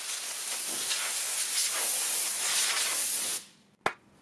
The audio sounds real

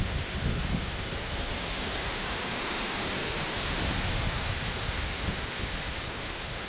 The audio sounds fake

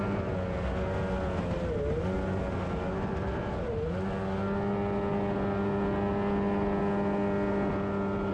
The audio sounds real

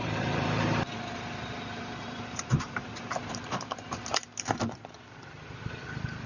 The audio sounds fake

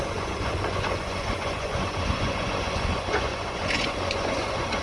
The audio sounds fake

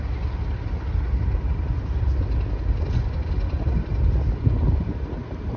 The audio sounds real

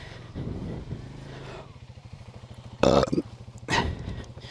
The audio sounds fake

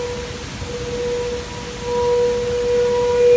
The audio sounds real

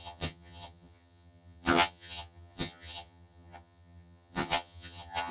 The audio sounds fake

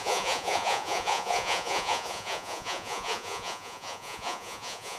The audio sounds fake